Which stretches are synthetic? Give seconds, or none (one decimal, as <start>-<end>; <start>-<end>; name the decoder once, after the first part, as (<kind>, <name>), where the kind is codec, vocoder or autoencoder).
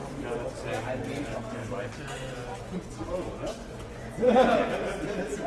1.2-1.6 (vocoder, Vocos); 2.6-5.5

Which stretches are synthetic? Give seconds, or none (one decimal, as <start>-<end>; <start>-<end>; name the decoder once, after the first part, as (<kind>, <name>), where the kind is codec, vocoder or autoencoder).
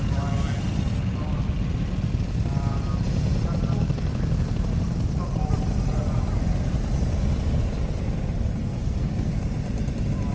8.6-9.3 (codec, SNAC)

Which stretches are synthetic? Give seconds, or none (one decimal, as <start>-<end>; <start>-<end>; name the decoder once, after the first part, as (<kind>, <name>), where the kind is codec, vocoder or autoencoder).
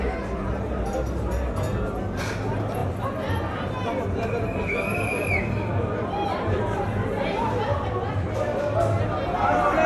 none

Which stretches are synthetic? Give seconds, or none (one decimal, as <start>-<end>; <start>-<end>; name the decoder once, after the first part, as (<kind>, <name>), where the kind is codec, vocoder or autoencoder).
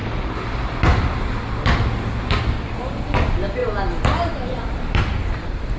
none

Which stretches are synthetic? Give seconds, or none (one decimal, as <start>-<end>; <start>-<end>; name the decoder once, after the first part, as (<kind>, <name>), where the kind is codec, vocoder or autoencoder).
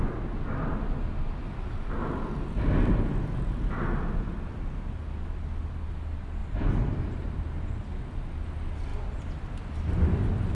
6.4-7.0 (vocoder, BigVGAN v2); 8.9-10.5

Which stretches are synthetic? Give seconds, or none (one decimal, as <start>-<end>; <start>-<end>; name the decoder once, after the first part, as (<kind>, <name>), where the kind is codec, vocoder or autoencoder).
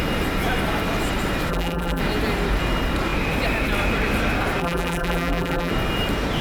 1.5-2.0 (vocoder, BigVGAN v2); 4.6-5.7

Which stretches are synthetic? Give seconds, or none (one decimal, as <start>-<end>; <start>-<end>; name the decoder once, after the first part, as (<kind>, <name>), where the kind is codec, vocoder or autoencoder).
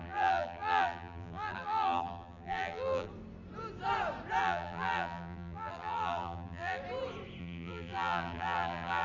0.0-3.1 (vocoder, BigVGAN v2); 4.4-6.8; 7.4-9.0